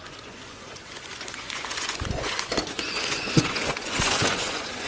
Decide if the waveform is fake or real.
fake